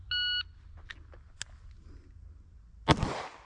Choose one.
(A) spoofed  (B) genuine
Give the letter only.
B